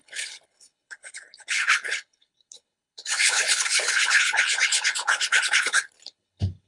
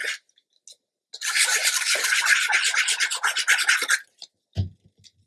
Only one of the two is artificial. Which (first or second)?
first